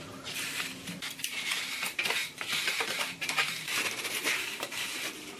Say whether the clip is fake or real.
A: fake